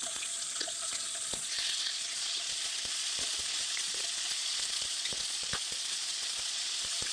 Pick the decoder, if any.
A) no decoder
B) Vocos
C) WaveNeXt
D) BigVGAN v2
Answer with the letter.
B